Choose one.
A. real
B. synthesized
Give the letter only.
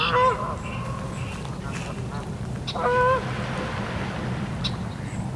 A